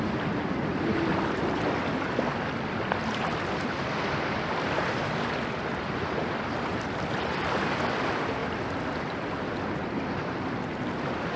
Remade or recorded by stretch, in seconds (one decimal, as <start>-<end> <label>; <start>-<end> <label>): 0.0-8.4 remade; 8.4-9.6 recorded; 9.6-10.2 remade; 10.2-11.4 recorded